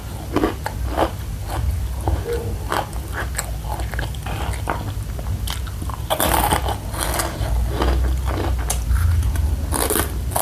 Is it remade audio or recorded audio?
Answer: recorded